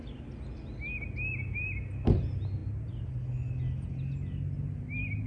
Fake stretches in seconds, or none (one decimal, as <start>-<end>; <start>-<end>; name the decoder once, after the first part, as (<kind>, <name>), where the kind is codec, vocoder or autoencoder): none